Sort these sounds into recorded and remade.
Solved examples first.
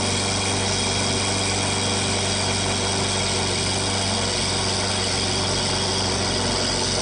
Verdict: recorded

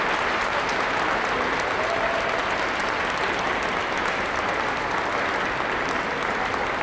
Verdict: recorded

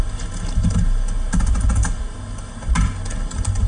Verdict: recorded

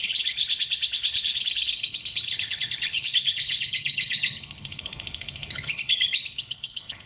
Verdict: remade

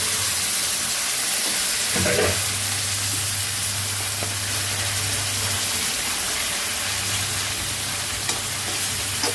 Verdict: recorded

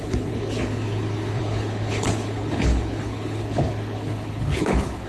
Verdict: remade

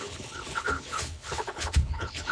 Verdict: remade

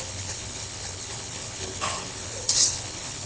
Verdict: remade